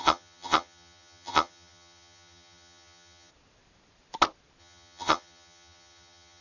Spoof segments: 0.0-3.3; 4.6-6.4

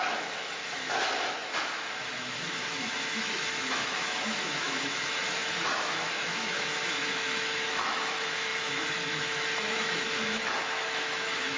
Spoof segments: 0.0-11.6

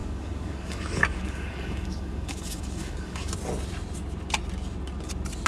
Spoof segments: 0.0-3.3

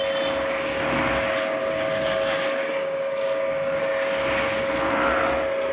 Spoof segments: 1.6-3.8

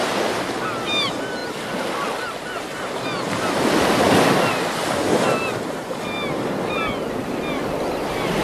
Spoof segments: none

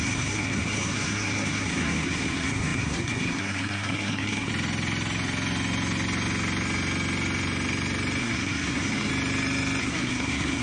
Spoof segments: 0.0-4.5; 8.2-9.1; 9.8-10.6

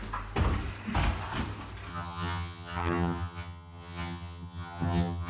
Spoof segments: 1.9-5.3

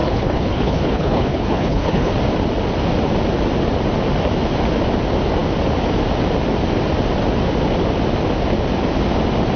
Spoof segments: 0.0-2.1